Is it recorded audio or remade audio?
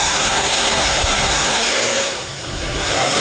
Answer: remade